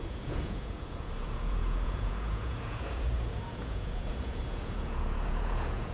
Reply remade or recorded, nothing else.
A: remade